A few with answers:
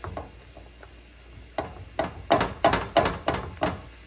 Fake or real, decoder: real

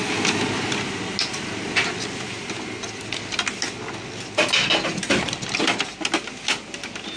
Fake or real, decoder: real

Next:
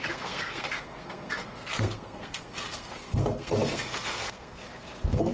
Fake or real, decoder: fake, codec, SNAC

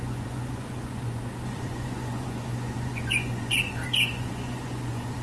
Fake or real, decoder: fake, vocoder, Vocos